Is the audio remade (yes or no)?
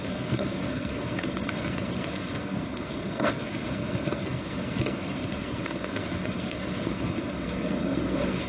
yes